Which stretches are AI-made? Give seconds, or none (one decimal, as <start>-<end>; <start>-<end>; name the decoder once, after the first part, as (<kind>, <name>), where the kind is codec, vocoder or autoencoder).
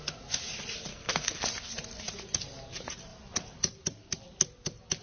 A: 0.9-1.4 (codec, SNAC)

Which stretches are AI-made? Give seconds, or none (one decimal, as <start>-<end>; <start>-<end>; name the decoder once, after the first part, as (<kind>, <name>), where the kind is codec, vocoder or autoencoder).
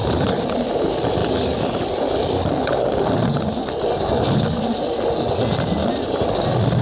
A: none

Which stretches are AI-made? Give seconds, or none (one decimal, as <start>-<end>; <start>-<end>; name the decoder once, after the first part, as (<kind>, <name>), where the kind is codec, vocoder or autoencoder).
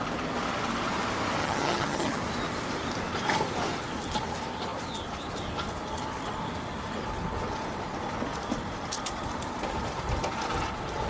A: 1.4-2.2 (vocoder, HiFi-GAN)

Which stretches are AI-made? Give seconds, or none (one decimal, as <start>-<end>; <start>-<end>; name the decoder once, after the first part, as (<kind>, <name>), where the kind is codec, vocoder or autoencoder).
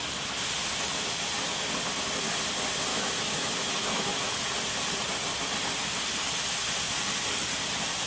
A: 2.9-4.5 (autoencoder, DAC-VAE)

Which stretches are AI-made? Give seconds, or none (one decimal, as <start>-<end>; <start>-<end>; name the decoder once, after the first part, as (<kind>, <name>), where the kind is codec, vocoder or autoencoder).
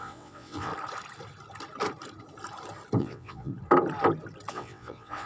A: 0.0-0.7 (vocoder, WaveNeXt); 3.0-3.5; 4.5-5.3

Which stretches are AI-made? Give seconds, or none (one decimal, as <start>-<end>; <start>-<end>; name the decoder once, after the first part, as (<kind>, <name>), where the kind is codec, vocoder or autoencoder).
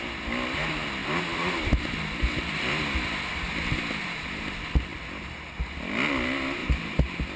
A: 6.6-7.4 (vocoder, BigVGAN v2)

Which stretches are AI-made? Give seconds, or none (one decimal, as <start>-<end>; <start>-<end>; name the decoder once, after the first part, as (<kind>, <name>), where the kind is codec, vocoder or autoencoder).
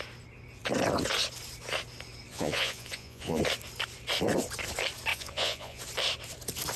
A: 2.3-3.4 (vocoder, Vocos); 5.1-5.8